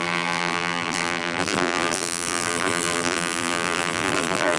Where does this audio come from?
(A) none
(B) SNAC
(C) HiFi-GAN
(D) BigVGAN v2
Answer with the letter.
D